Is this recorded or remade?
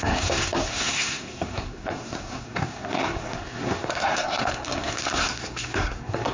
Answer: remade